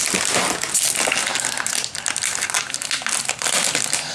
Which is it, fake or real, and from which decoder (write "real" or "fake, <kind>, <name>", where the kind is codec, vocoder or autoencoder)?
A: real